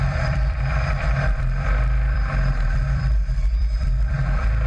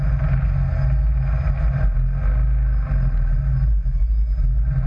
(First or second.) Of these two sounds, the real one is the second